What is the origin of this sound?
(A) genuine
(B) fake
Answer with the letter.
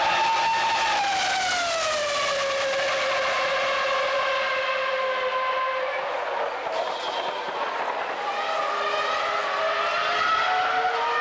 A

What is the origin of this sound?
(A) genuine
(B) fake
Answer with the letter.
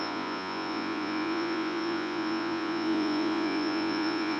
B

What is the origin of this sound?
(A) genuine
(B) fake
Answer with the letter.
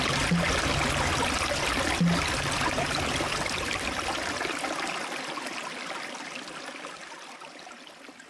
A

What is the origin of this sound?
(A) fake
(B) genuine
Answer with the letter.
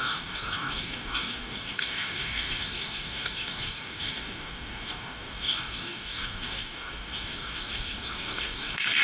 A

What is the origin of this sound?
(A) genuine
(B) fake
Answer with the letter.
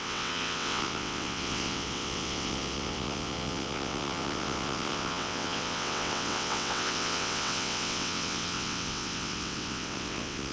B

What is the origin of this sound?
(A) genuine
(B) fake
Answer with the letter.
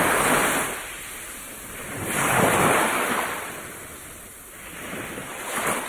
A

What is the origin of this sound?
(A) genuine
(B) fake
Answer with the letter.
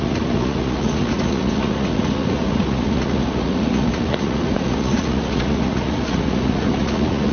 B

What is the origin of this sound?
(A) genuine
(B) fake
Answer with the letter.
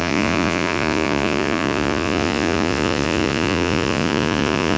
B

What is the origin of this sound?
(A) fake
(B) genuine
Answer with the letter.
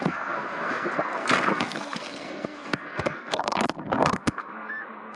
A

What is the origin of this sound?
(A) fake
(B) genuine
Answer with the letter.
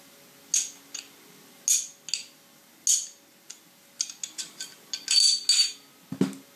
B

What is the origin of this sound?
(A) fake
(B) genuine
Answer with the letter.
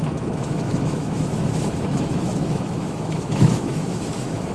A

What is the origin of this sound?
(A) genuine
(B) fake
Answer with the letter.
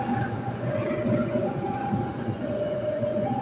B